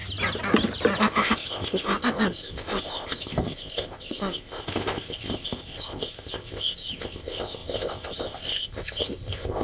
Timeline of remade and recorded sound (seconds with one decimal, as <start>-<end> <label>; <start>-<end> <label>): 0.0-1.0 recorded; 1.0-9.6 remade